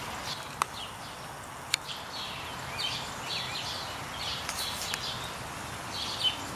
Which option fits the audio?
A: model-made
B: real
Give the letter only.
B